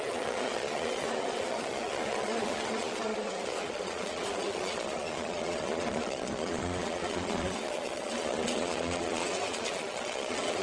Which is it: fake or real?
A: fake